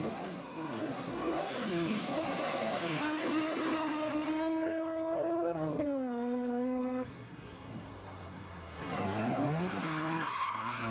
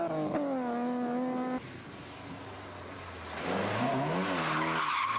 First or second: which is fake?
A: first